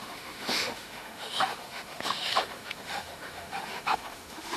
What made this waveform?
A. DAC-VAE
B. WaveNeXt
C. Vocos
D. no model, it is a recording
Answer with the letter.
A